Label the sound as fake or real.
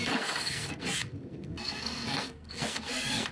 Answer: fake